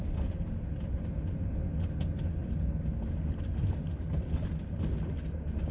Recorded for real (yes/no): yes